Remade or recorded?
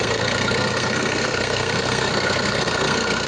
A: remade